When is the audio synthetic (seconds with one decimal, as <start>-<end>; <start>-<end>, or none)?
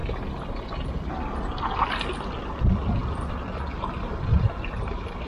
none